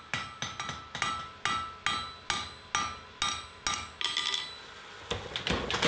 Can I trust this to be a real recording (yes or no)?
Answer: yes